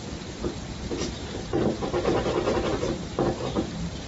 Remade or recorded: remade